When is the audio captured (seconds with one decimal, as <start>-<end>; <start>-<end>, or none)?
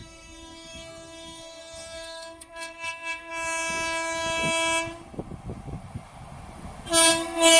3.3-7.1